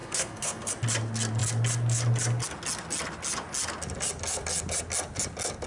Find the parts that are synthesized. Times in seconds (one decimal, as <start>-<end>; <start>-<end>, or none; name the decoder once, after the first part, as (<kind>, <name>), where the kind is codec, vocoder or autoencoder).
0.0-0.7 (codec, SNAC)